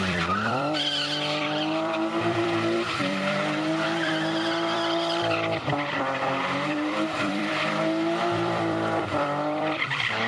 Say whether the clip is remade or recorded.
remade